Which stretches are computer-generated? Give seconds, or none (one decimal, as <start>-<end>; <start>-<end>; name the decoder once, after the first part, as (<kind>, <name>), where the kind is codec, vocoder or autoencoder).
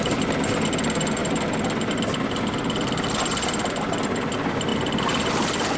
none